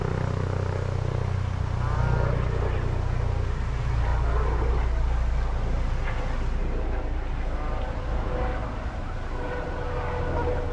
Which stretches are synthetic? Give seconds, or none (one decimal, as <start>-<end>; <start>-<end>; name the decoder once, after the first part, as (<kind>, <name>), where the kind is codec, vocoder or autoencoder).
none